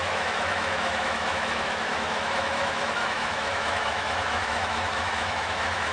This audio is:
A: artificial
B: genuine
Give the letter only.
A